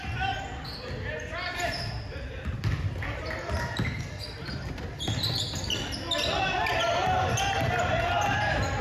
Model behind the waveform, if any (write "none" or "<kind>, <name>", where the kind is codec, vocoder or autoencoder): none